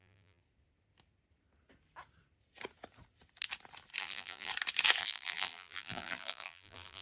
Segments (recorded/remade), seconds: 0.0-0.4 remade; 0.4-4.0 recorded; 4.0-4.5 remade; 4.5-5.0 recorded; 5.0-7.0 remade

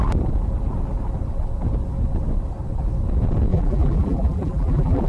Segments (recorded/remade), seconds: 0.0-3.5 recorded; 3.5-5.1 remade

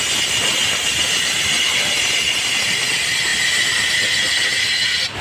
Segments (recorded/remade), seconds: 0.0-5.2 recorded

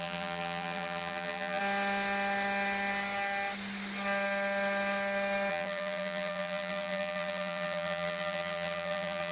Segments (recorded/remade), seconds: 0.0-1.6 remade; 1.6-5.5 recorded; 5.5-9.3 remade